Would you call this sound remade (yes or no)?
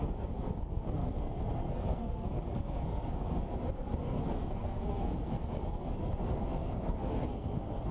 yes